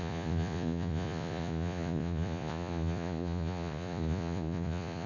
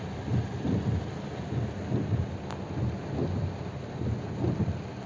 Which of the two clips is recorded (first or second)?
second